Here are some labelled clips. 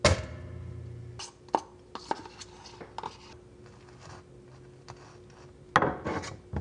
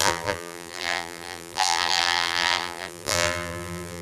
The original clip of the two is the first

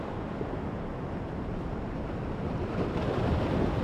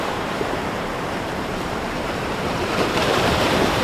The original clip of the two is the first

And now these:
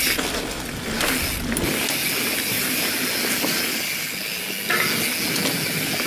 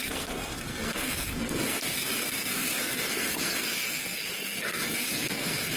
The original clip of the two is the first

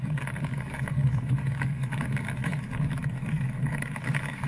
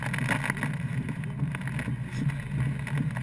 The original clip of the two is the second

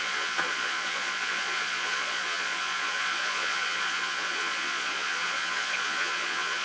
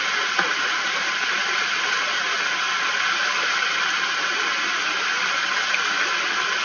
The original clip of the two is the second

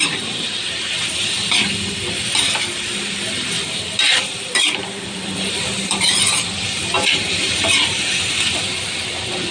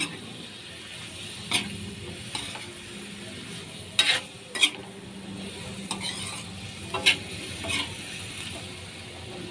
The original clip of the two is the second